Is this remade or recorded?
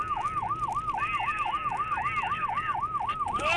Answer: recorded